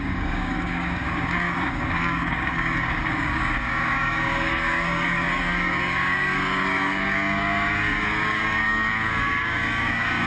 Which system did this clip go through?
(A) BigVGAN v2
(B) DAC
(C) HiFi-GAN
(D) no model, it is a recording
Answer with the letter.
B